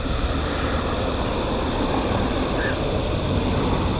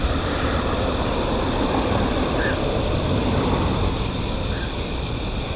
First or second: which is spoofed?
second